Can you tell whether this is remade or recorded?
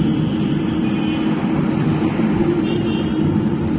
recorded